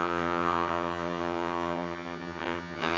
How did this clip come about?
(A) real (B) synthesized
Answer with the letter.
B